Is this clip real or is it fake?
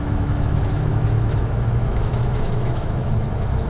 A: fake